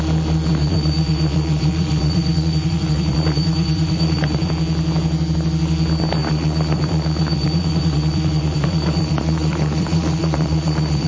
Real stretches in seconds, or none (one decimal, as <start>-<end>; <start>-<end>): 0.0-0.5; 4.5-6.2